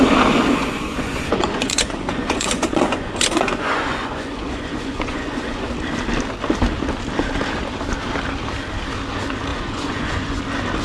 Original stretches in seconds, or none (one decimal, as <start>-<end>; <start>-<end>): 0.0-0.6; 5.7-9.5; 10.4-10.8